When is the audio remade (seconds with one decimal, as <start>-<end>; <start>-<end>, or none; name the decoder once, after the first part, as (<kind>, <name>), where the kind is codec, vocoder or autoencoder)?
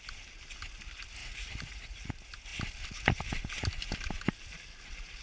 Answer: 1.2-2.1 (vocoder, Vocos)